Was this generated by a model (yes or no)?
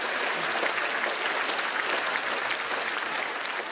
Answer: no